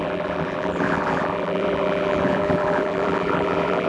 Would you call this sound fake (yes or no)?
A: yes